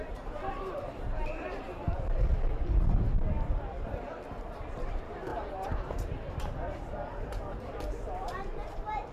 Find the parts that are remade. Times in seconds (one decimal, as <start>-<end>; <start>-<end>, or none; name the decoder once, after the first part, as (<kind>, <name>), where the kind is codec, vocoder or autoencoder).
0.0-2.3 (vocoder, BigVGAN v2); 3.9-9.1